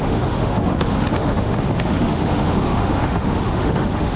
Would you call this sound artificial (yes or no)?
yes